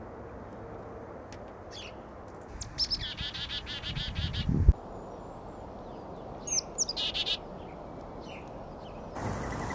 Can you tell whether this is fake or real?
real